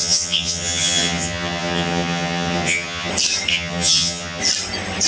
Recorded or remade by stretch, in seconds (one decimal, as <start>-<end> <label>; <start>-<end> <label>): 0.0-3.1 remade; 3.1-3.5 recorded; 3.5-4.4 remade; 4.4-5.1 recorded